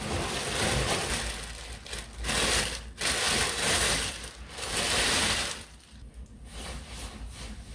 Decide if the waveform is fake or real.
real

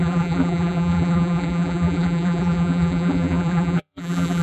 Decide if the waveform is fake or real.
fake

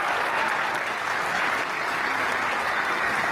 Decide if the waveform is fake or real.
real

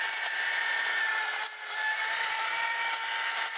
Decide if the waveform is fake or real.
real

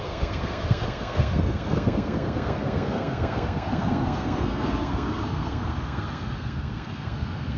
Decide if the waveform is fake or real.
fake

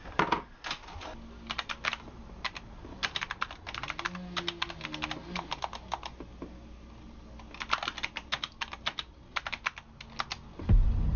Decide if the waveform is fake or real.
real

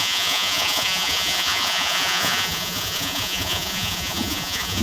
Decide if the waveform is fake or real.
fake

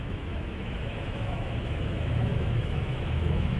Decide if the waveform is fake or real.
fake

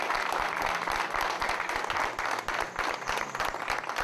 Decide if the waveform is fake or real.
real